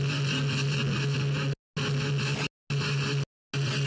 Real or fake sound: real